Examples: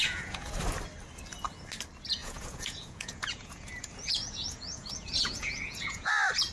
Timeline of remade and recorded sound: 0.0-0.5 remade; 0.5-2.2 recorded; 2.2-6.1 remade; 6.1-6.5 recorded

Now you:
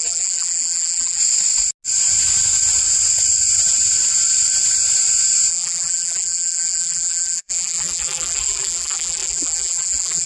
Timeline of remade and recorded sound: 0.0-1.2 remade; 1.2-5.5 recorded; 5.5-10.3 remade

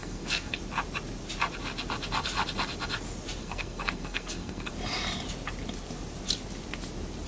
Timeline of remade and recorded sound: 0.0-0.6 remade; 0.6-3.4 recorded; 3.4-4.7 remade; 4.7-7.3 recorded

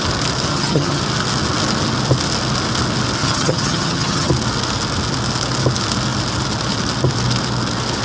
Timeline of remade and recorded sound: 0.0-0.5 recorded; 0.5-1.0 remade; 1.0-3.2 recorded; 3.2-4.3 remade; 4.3-8.0 recorded

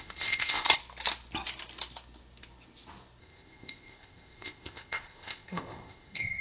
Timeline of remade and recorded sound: 0.0-0.8 remade; 0.8-3.2 recorded; 3.2-6.4 remade

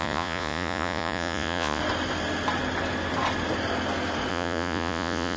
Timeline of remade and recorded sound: 0.0-1.8 remade; 1.8-4.3 recorded; 4.3-5.4 remade

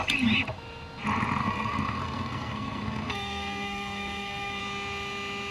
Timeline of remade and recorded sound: 0.0-1.4 recorded; 1.4-4.6 remade; 4.6-5.5 recorded